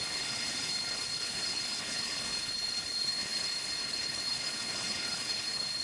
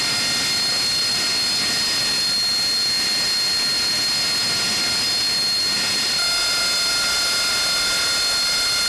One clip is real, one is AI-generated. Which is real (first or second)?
second